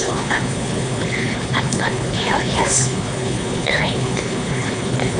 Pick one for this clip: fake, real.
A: fake